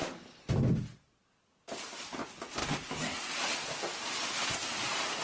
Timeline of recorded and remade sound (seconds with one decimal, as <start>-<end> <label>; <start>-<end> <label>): 0.0-2.6 recorded; 2.6-3.3 remade; 3.3-4.6 recorded; 4.6-5.2 remade

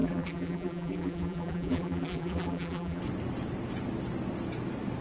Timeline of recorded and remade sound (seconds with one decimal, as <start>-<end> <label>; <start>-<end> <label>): 0.0-3.0 remade; 3.0-5.0 recorded

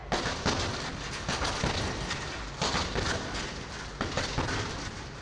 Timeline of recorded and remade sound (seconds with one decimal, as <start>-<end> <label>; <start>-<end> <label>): 0.0-5.2 recorded

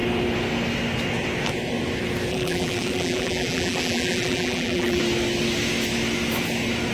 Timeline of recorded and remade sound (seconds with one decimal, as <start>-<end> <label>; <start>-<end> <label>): 0.0-2.3 recorded; 2.3-5.0 remade; 5.0-6.9 recorded

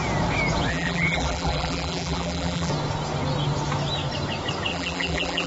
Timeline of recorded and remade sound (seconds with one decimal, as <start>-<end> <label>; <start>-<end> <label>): 0.0-0.7 recorded; 0.7-2.7 remade; 2.7-4.7 recorded; 4.7-5.5 remade

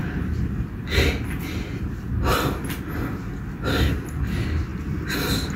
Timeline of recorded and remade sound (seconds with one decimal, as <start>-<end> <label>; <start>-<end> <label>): 0.0-5.6 recorded

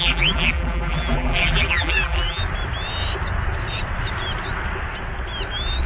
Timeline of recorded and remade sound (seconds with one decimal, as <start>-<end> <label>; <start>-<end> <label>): 0.0-2.4 remade; 2.4-5.9 recorded